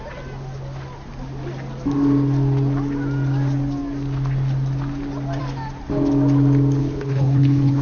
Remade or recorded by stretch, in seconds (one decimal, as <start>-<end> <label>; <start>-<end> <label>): 0.0-6.8 recorded; 6.8-7.8 remade